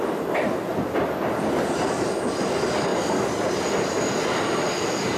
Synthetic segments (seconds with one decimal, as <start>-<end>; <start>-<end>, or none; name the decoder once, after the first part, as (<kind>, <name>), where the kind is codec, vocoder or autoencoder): none